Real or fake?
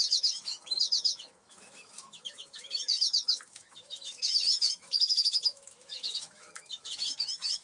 fake